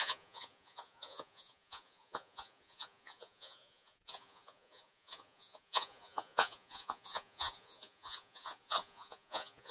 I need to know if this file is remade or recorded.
remade